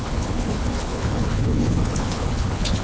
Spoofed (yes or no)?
yes